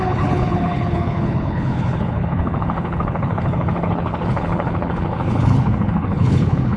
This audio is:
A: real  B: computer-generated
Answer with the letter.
B